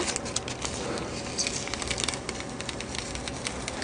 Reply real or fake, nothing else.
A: real